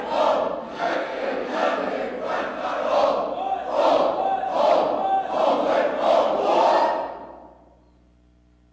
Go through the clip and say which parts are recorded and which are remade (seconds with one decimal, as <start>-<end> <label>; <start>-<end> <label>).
0.0-0.6 recorded; 0.6-1.9 remade; 1.9-8.7 recorded